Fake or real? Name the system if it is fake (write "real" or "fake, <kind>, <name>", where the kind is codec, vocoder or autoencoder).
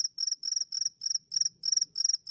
real